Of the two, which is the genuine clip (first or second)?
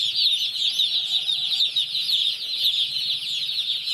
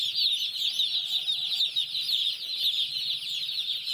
second